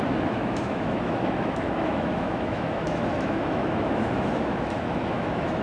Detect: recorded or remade remade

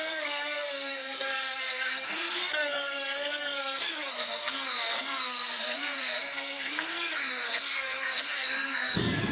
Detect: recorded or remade remade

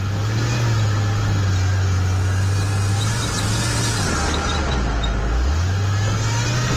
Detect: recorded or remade recorded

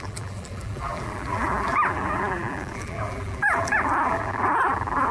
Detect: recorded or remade remade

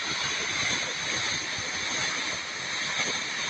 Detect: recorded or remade recorded